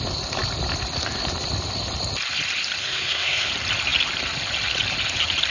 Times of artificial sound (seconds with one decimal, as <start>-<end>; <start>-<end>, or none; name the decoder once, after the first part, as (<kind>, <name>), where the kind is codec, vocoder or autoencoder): 2.8-3.5 (codec, SNAC)